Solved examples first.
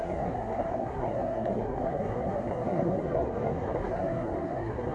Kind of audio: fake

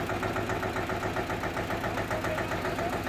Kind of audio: real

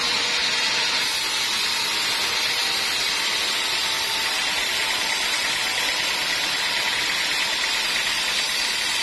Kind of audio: real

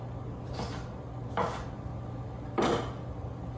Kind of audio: real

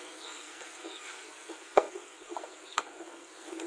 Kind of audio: fake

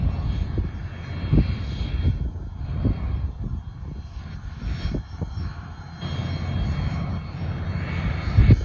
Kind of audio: real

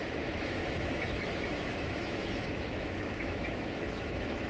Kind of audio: fake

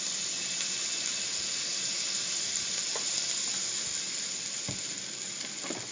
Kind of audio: real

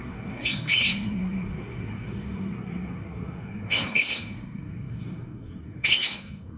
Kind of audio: fake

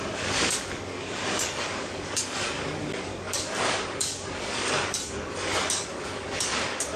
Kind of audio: fake